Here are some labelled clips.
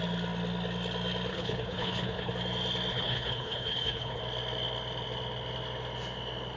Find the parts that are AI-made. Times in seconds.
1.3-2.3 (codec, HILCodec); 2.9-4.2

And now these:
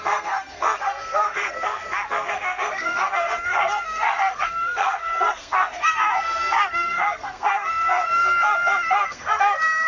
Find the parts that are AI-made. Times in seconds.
0.0-9.9 (codec, SNAC)

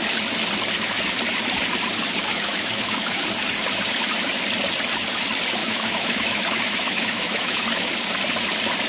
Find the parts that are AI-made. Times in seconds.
2.2-3.2 (autoencoder, DAC-VAE); 5.6-7.9

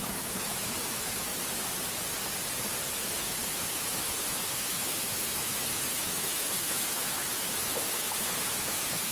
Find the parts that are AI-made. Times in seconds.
0.0-1.3 (autoencoder, DAC-VAE); 2.9-9.1

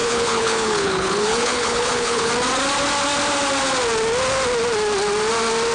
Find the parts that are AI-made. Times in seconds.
0.0-2.3 (codec, HILCodec)